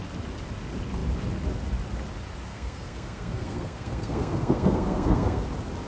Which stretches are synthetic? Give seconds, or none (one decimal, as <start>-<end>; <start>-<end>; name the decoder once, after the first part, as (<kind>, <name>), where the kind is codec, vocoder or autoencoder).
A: 2.5-5.4 (codec, SNAC)